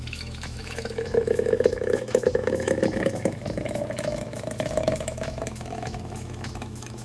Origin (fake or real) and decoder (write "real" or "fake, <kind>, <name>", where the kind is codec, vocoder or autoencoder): fake, autoencoder, DAC-VAE